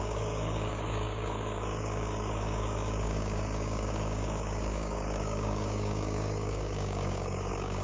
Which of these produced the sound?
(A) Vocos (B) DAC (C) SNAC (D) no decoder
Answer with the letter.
B